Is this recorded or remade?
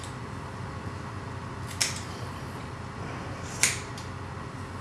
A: recorded